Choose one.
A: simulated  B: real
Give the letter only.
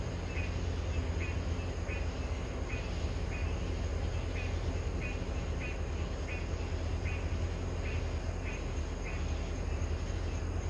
B